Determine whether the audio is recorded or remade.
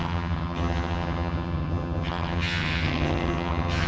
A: remade